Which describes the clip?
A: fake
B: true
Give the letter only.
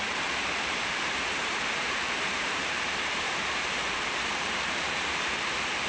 A